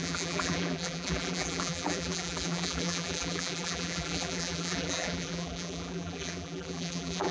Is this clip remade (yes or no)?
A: yes